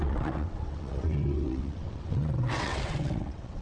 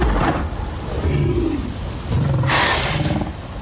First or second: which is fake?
first